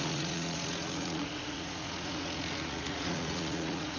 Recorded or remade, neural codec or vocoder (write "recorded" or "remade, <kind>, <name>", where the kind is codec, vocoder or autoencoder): remade, vocoder, Vocos